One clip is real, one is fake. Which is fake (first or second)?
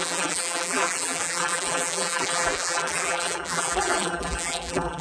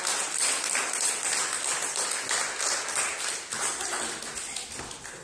first